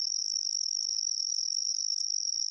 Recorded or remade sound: recorded